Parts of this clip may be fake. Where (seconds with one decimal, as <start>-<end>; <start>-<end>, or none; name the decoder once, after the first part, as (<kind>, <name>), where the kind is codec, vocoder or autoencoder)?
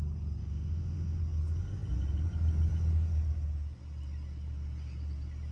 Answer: 0.4-1.2 (autoencoder, DAC-VAE)